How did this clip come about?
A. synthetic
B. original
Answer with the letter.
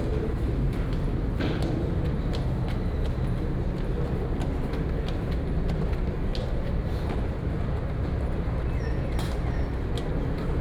B